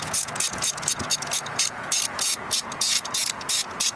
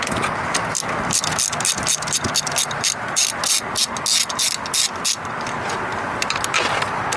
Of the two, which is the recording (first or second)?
second